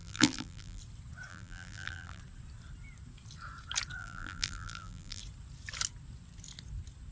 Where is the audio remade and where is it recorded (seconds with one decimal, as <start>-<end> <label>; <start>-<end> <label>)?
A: 0.0-0.8 remade; 0.8-1.3 recorded; 1.3-2.2 remade; 2.2-4.0 recorded; 4.0-5.2 remade; 5.2-7.1 recorded

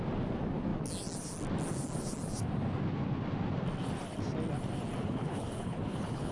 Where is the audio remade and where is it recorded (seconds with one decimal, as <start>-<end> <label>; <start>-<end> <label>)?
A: 0.0-5.0 recorded; 5.0-6.3 remade